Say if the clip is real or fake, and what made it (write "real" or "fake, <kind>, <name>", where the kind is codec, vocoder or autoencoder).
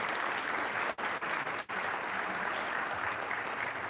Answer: real